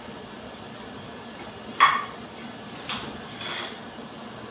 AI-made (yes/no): no